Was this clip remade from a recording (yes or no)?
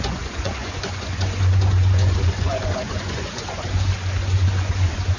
yes